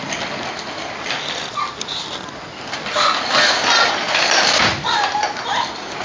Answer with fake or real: real